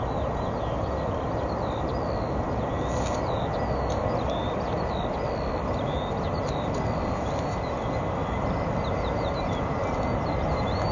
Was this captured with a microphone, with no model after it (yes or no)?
yes